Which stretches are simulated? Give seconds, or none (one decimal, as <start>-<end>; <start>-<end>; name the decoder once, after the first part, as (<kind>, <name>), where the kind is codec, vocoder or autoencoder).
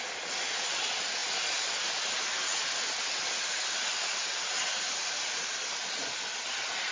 none